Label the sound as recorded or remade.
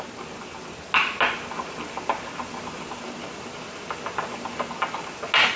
recorded